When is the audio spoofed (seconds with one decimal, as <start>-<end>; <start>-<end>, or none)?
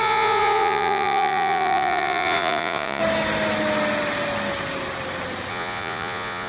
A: 0.0-3.0; 5.5-6.5